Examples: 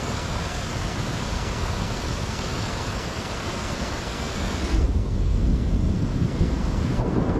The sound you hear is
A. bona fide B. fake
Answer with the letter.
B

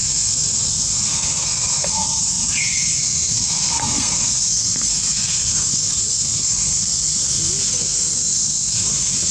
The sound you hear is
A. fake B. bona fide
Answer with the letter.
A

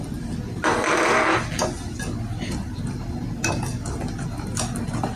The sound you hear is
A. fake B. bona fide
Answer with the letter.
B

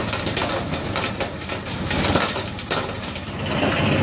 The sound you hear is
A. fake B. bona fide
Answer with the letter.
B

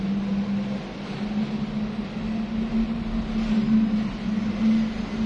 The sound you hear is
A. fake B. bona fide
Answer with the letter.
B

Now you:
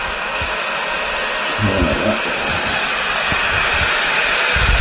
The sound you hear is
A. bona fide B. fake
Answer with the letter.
B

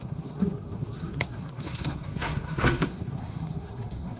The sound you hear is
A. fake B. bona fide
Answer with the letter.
A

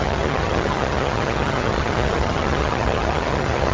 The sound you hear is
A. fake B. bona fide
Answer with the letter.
A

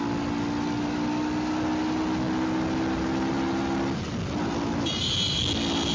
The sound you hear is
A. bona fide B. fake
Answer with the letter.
A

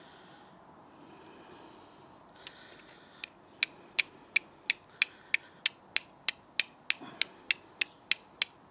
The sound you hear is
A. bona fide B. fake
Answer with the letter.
A